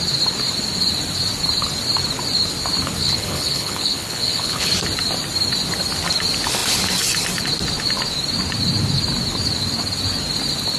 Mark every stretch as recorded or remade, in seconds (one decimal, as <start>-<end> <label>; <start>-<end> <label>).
0.0-3.0 recorded; 3.0-4.7 remade; 4.7-10.8 recorded